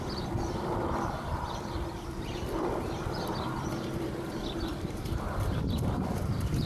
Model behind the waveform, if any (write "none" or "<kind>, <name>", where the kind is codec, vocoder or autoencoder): vocoder, BigVGAN v2